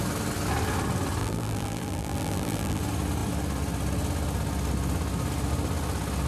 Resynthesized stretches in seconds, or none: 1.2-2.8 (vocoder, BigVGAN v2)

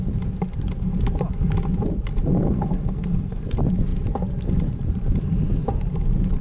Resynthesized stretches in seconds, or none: 2.3-3.4 (codec, SNAC)

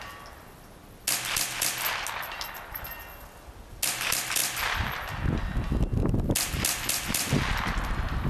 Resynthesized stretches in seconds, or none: none

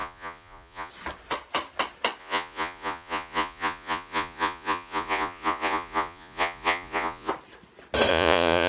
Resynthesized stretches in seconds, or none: 0.0-0.9 (vocoder, Vocos); 2.2-7.3; 8.1-8.7

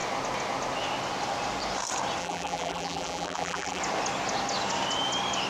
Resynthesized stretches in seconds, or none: 2.2-3.8 (vocoder, BigVGAN v2)

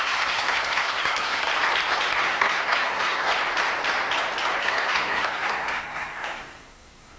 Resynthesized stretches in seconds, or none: 0.0-1.5 (codec, SNAC); 2.2-3.3; 4.6-7.2